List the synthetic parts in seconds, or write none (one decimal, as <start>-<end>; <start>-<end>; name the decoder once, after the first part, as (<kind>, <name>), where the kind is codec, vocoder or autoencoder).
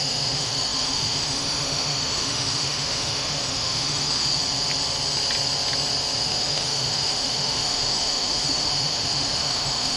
0.0-4.4 (autoencoder, DAC-VAE); 6.2-10.0